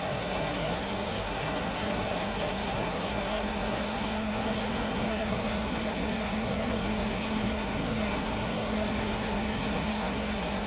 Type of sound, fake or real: fake